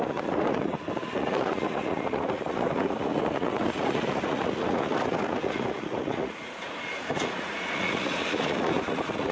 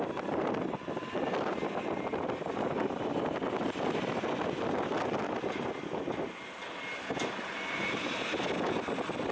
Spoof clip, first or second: first